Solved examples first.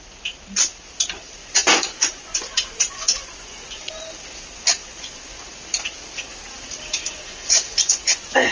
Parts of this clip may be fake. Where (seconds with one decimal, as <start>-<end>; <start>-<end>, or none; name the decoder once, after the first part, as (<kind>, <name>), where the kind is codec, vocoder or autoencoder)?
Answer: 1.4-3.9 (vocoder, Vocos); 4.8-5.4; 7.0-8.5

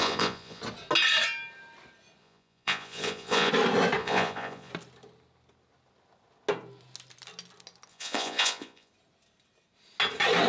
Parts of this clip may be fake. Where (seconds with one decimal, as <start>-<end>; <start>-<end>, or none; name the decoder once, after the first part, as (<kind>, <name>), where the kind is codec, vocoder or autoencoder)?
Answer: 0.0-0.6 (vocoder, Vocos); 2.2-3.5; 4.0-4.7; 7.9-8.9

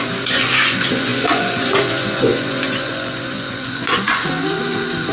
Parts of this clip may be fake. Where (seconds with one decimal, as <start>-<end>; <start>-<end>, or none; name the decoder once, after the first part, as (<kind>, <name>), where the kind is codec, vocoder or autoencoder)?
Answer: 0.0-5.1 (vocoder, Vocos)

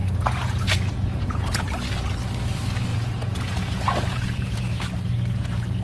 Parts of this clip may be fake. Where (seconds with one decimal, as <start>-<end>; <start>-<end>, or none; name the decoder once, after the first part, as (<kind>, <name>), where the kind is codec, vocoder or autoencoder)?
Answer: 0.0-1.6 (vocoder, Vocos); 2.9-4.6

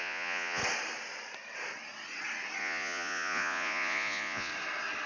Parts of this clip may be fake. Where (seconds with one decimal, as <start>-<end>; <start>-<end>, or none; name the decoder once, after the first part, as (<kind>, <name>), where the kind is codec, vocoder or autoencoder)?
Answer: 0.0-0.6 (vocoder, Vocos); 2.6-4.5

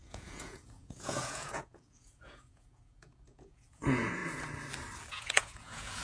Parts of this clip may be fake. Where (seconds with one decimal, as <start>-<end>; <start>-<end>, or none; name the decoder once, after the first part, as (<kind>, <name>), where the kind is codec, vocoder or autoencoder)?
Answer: 0.0-4.2 (vocoder, Vocos); 5.1-6.0

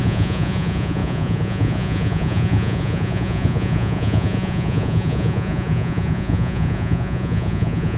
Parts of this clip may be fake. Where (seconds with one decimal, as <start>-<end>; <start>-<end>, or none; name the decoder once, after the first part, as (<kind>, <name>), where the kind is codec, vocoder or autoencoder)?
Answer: 0.0-8.0 (vocoder, Vocos)

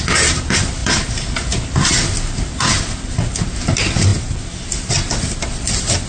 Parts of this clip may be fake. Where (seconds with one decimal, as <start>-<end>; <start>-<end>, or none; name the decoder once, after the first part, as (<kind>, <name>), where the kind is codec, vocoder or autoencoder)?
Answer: none